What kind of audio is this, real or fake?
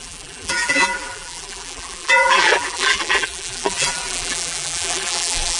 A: fake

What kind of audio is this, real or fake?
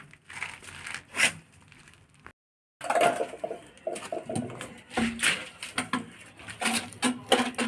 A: real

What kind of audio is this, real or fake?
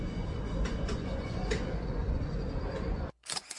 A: fake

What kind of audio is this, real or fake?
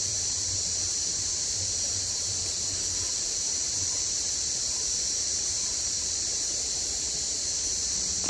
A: fake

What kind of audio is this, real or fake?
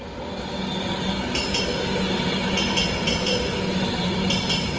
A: real